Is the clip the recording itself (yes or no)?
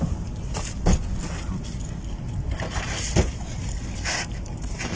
yes